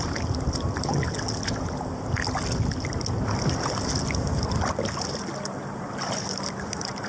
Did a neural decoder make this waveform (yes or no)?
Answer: no